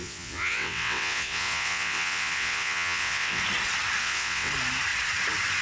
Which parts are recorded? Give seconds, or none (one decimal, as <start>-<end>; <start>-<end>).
3.4-4.0; 4.5-5.6